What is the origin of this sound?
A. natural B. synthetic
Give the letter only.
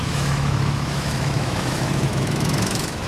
B